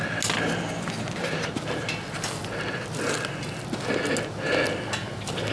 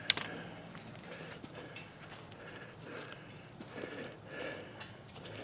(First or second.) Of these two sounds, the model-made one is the second